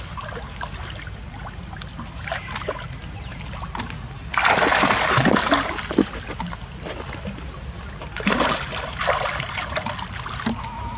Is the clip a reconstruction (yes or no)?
no